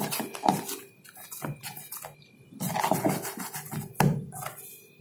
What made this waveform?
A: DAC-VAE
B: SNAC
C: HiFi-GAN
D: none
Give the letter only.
D